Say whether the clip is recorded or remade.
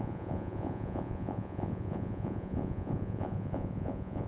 remade